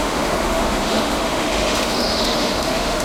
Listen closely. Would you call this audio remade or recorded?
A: remade